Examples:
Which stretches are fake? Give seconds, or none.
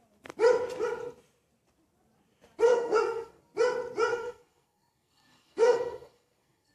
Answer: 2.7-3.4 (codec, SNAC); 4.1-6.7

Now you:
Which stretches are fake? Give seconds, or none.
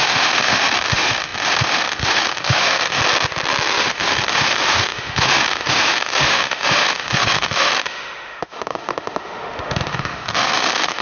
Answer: 0.0-3.0 (autoencoder, DAC-VAE); 3.8-11.0